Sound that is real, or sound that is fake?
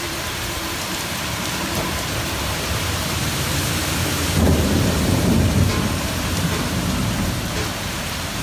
fake